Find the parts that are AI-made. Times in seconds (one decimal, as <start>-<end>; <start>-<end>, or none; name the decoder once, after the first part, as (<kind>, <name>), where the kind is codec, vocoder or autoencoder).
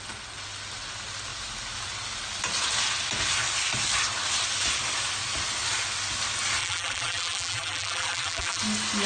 6.6-8.6 (vocoder, BigVGAN v2)